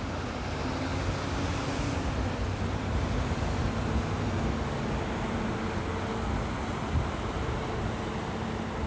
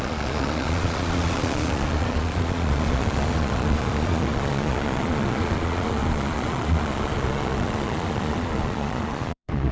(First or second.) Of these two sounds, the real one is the first